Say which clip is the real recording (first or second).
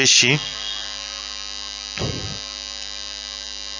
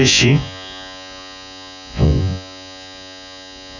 first